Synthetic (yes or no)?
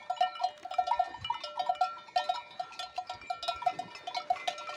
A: no